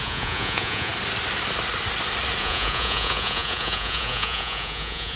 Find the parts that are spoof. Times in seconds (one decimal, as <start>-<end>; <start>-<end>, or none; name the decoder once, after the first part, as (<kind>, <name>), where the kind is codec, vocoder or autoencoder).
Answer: 0.0-0.9 (vocoder, Vocos); 2.4-5.2